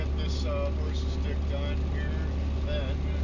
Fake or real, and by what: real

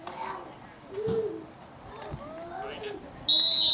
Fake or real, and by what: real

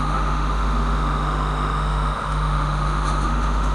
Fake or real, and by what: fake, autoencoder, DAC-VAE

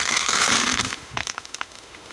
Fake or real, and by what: fake, autoencoder, DAC-VAE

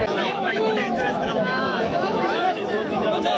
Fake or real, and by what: fake, autoencoder, DAC-VAE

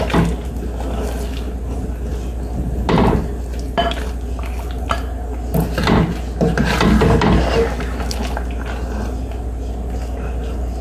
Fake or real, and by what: real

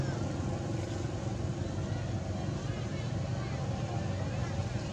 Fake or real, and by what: real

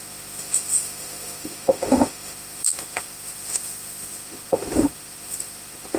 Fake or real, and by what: fake, autoencoder, DAC-VAE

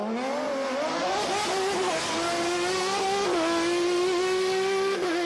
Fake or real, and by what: real